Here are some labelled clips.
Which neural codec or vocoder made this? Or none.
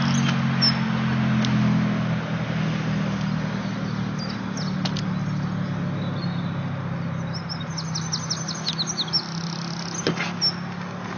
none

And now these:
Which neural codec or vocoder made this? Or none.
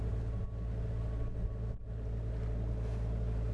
none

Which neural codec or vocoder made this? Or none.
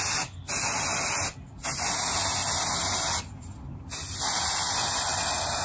none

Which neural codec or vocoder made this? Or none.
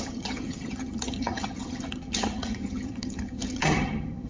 vocoder, HiFi-GAN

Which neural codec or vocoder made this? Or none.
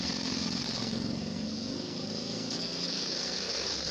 codec, SNAC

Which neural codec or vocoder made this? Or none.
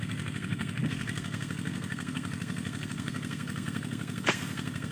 codec, SNAC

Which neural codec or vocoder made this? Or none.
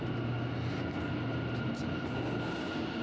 none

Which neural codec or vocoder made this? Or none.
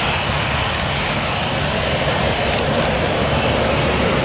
none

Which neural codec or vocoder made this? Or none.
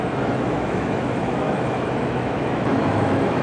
autoencoder, DAC-VAE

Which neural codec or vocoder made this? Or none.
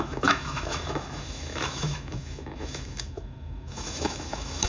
autoencoder, DAC-VAE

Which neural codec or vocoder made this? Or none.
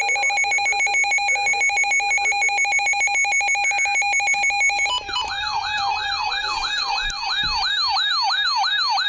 none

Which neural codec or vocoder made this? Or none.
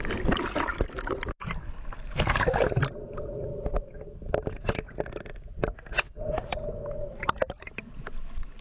none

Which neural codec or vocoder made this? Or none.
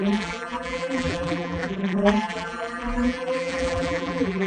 vocoder, BigVGAN v2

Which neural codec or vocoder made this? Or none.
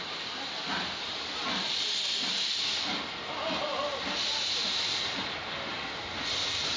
none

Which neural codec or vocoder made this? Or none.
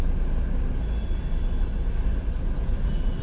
none